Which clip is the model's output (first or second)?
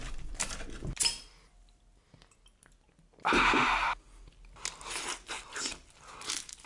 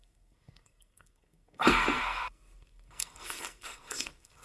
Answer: second